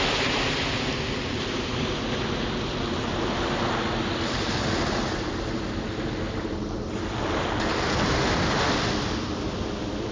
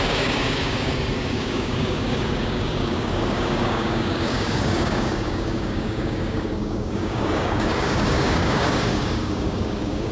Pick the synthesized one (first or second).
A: second